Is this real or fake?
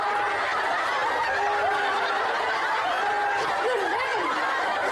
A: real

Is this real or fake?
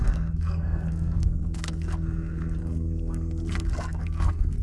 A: fake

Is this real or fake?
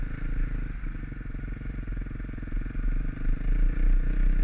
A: real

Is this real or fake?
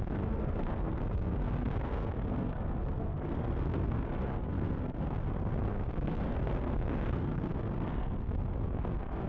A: fake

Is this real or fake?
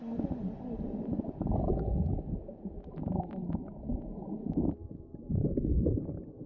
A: real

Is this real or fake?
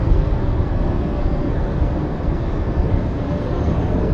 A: fake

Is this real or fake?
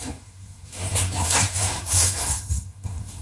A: fake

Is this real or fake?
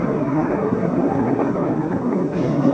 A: fake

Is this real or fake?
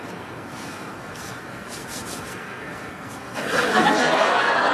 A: fake